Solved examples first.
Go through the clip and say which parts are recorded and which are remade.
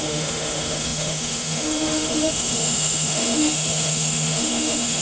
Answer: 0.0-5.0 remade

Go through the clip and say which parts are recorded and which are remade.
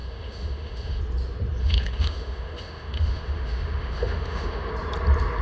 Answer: 0.0-1.0 remade; 1.0-1.6 recorded; 1.6-4.7 remade; 4.7-5.4 recorded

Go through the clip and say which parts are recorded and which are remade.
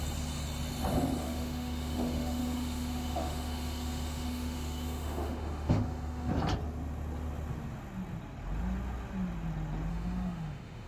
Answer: 0.0-1.2 recorded; 1.2-6.3 remade; 6.3-9.9 recorded; 9.9-10.9 remade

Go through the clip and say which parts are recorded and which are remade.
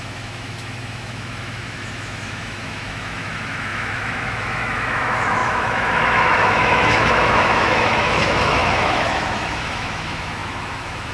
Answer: 0.0-11.1 remade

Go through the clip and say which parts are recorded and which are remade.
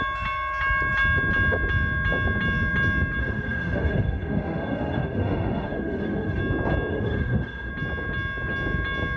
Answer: 0.0-3.2 recorded; 3.2-6.4 remade; 6.4-6.9 recorded; 6.9-7.7 remade; 7.7-9.2 recorded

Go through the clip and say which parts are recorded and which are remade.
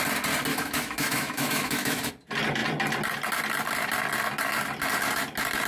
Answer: 0.0-0.5 recorded; 0.5-2.1 remade; 2.1-5.7 recorded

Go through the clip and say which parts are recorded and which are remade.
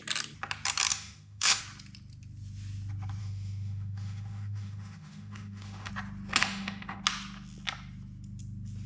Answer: 0.0-0.9 recorded; 0.9-1.6 remade; 1.6-3.2 recorded; 3.2-5.9 remade; 5.9-6.4 recorded; 6.4-7.0 remade; 7.0-8.9 recorded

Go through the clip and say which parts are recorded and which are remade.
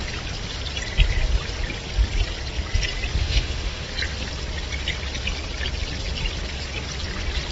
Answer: 0.0-3.2 recorded; 3.2-3.9 remade; 3.9-7.5 recorded